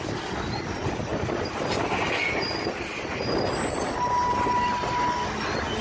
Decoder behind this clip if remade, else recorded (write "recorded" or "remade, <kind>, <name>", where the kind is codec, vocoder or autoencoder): recorded